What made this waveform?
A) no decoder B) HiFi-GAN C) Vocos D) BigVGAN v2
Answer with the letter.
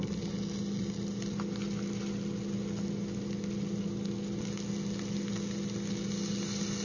A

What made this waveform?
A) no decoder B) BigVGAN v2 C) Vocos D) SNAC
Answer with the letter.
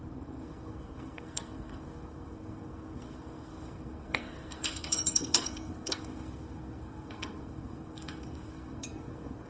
D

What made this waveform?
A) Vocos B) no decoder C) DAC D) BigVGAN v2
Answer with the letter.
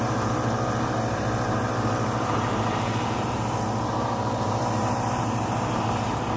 D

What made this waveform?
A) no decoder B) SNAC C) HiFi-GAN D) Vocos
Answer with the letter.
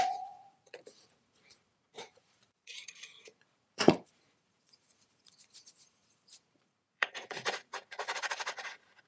D